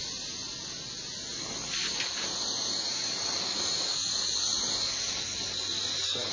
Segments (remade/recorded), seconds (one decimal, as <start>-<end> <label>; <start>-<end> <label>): 0.0-6.3 recorded

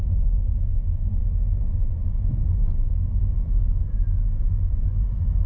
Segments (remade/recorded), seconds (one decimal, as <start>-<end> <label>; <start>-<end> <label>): 0.0-5.5 recorded

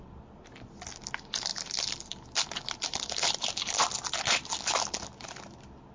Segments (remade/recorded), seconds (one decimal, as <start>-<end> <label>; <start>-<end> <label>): 0.0-5.9 recorded

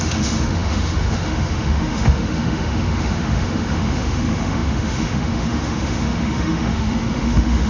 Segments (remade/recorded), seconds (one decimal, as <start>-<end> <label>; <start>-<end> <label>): 0.0-7.7 remade

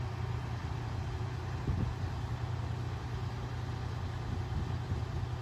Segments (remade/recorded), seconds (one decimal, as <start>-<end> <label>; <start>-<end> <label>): 0.0-0.6 recorded; 0.6-1.6 remade; 1.6-5.4 recorded

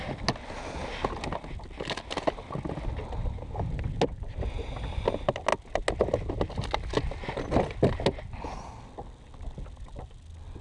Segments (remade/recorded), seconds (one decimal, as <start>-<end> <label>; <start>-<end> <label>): 0.0-10.6 recorded

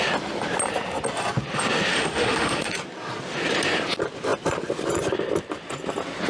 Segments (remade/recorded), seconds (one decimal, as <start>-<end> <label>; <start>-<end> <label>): 0.0-1.9 recorded; 1.9-2.7 remade; 2.7-6.3 recorded